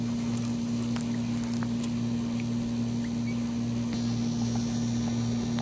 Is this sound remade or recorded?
recorded